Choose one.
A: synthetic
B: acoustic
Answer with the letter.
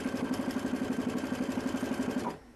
B